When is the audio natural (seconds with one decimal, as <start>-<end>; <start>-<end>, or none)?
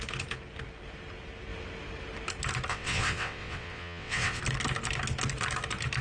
0.0-2.7; 4.4-6.0